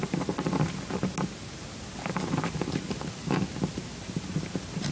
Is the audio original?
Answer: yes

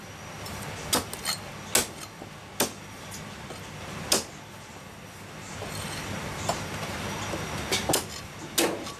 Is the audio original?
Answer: yes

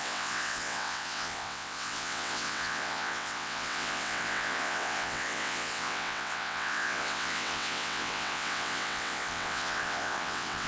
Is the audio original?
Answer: no